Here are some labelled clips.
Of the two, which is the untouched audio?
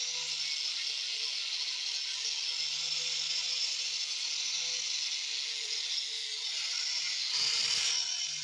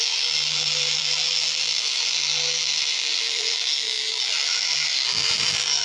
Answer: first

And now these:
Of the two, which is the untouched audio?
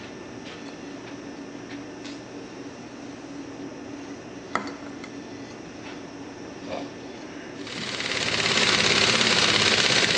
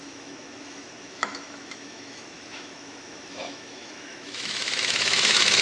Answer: first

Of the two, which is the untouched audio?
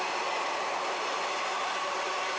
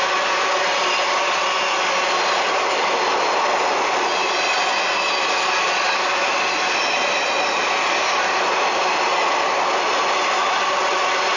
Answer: second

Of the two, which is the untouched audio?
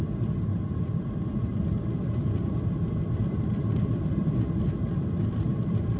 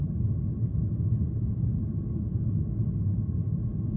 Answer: second